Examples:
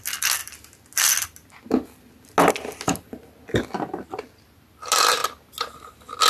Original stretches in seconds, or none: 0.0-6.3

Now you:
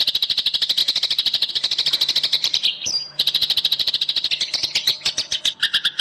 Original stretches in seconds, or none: 0.0-2.3; 3.9-6.0

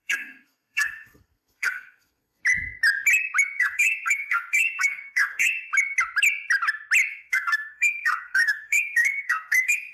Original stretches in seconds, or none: 2.4-3.6; 5.7-7.1

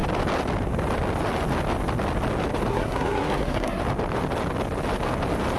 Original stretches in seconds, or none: 0.0-2.7; 3.8-5.6